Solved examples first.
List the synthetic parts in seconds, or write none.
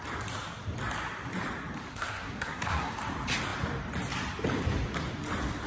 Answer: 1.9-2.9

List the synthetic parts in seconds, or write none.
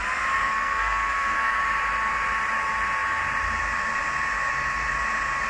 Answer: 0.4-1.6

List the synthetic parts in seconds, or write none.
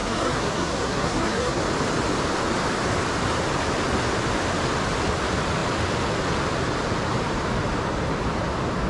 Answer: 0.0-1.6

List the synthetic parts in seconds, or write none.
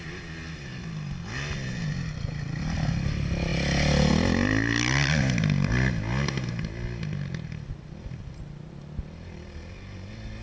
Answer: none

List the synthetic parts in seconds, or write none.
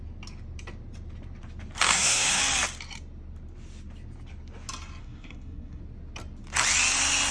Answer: 1.9-2.4; 5.0-5.8